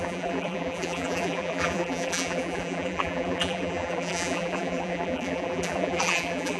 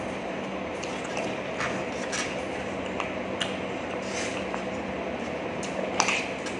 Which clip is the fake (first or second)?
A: first